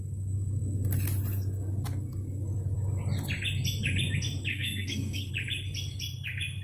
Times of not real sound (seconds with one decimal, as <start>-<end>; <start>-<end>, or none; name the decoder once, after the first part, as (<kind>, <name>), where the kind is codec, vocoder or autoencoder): 4.5-5.3 (codec, SNAC)